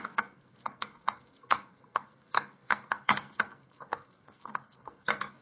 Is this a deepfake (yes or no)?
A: yes